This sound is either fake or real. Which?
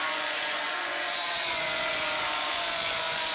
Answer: fake